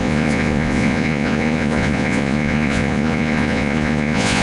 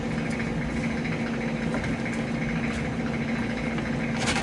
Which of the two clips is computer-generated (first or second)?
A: first